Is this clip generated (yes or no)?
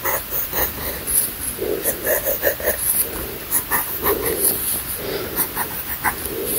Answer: no